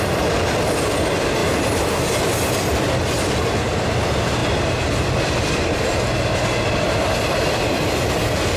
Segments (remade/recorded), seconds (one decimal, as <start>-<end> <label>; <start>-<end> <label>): 0.0-8.6 recorded